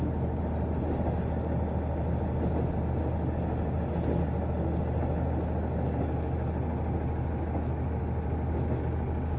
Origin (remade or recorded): recorded